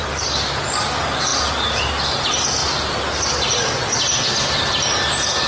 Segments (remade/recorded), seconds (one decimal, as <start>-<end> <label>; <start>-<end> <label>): 0.0-5.5 recorded